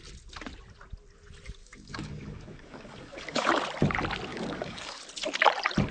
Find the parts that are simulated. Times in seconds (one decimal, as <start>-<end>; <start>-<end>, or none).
1.6-3.5; 4.3-5.0